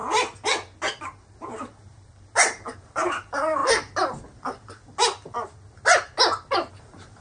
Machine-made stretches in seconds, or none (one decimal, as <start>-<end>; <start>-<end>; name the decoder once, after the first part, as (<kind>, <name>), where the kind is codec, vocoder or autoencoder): 1.0-3.6 (vocoder, BigVGAN v2); 6.7-7.2